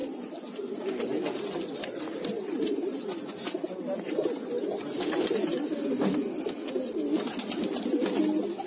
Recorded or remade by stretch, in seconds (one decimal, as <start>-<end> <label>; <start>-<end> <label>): 0.0-8.7 recorded